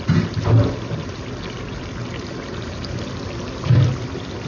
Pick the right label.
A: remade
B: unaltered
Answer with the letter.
B